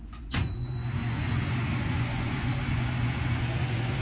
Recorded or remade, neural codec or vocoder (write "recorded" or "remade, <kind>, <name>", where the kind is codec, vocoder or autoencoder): remade, vocoder, Vocos